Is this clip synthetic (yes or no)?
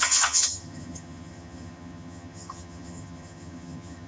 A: yes